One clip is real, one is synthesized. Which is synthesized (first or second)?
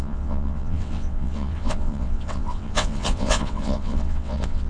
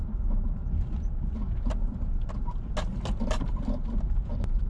first